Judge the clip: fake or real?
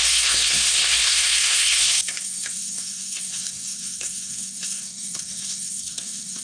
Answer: fake